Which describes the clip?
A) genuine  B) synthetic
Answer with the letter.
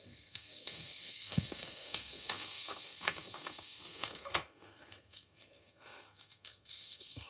B